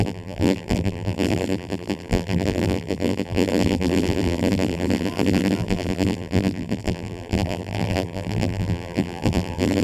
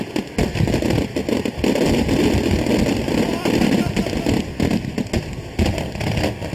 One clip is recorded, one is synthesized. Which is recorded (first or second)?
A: second